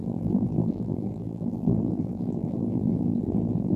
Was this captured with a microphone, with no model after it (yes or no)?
no